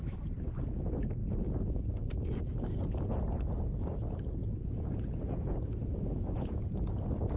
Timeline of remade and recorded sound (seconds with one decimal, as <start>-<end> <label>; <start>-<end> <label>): 0.0-1.2 recorded; 1.2-2.4 remade; 2.4-4.4 recorded; 4.4-6.6 remade; 6.6-7.4 recorded

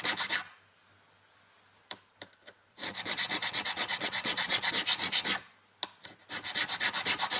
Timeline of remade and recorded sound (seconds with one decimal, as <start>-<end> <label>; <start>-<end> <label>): 0.0-2.7 recorded; 2.7-4.7 remade; 4.7-7.4 recorded

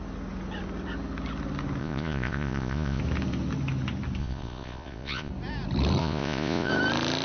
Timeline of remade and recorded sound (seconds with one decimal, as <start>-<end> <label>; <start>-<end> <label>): 0.0-1.8 recorded; 1.8-3.0 remade; 3.0-4.2 recorded; 4.2-5.3 remade; 5.3-6.0 recorded; 6.0-6.7 remade; 6.7-7.2 recorded

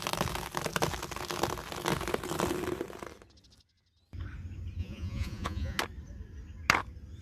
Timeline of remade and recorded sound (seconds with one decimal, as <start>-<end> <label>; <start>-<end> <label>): 0.0-4.8 recorded; 4.8-5.8 remade; 5.8-7.2 recorded

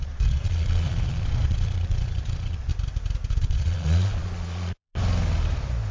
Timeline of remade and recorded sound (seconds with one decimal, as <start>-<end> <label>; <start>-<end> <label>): 0.0-2.7 remade; 2.7-3.3 recorded; 3.3-4.9 remade; 4.9-5.9 recorded